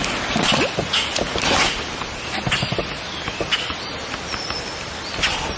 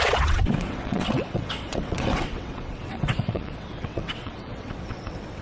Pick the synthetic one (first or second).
second